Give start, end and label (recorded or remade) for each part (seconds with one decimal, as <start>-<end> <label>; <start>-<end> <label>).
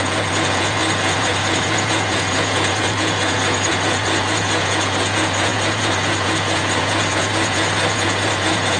0.0-8.8 remade